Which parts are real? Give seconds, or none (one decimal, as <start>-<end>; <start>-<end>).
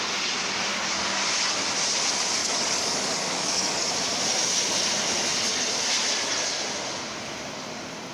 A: 0.0-0.7; 1.2-2.4; 3.9-8.1